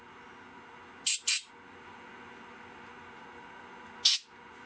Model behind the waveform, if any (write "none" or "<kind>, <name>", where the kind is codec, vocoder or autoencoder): none